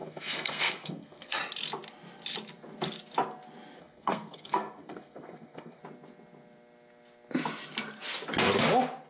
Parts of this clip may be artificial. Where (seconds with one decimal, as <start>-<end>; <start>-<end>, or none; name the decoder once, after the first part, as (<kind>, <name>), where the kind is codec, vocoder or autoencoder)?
0.0-1.4 (codec, SNAC); 3.8-5.8